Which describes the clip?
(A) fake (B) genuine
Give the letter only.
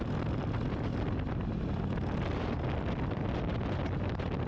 B